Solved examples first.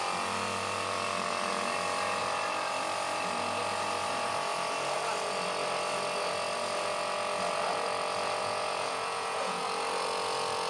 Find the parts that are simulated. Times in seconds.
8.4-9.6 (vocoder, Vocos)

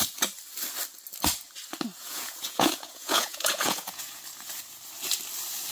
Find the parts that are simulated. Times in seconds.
2.0-4.2 (vocoder, Vocos)

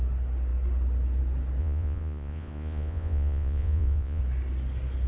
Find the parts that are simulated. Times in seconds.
1.6-4.2 (vocoder, Vocos)